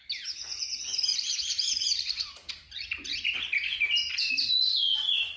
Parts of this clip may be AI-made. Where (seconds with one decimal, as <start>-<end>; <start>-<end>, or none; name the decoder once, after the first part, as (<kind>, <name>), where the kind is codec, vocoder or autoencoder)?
1.1-4.3 (vocoder, BigVGAN v2)